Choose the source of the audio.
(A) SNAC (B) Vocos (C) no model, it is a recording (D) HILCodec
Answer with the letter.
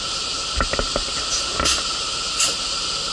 C